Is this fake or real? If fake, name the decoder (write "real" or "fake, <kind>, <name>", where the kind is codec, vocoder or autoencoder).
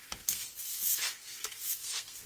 fake, codec, SNAC